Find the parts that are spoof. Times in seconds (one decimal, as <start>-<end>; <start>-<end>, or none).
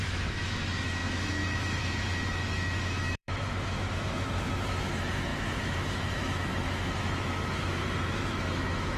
0.0-9.0